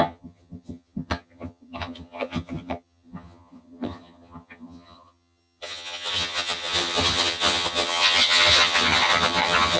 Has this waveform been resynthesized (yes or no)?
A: yes